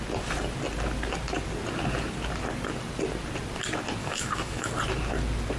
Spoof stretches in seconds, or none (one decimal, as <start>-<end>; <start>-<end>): 4.0-4.7